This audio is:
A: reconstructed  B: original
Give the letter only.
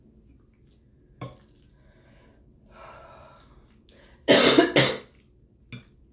B